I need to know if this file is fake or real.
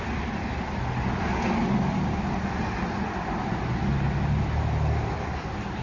real